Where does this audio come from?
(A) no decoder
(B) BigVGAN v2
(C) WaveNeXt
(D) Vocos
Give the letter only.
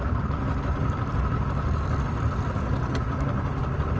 A